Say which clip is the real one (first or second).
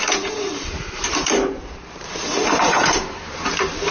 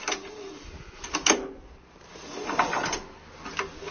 second